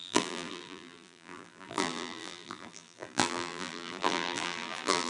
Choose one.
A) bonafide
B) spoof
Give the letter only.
B